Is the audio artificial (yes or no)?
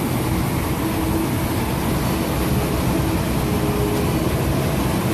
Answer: no